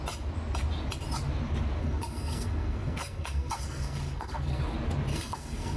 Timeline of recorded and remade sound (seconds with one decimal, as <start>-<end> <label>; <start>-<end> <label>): 0.0-1.8 recorded; 1.8-4.6 remade; 4.6-5.1 recorded; 5.1-5.8 remade